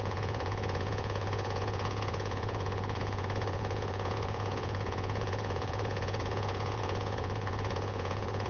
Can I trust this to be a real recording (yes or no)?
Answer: no